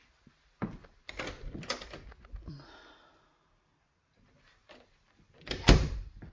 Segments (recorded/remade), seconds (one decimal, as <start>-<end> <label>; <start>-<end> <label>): 0.0-6.3 recorded